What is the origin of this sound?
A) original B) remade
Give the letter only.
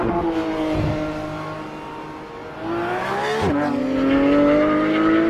A